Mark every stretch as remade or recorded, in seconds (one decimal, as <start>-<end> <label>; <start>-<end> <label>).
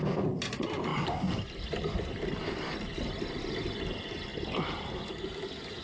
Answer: 0.0-5.8 recorded